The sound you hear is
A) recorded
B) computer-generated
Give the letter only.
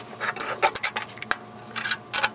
A